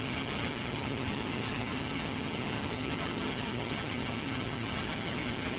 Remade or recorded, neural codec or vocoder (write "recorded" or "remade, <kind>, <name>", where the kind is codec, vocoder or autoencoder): remade, vocoder, HiFi-GAN